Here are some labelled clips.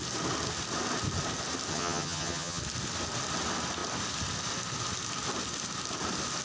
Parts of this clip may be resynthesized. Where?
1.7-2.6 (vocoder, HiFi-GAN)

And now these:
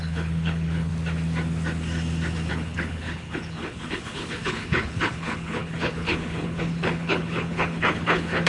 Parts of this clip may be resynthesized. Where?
0.0-0.9 (codec, HILCodec); 2.5-8.5